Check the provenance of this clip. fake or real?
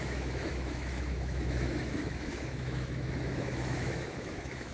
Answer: fake